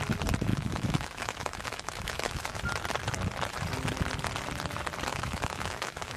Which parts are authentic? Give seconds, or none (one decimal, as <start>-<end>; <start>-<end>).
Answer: 0.0-0.5; 2.6-5.1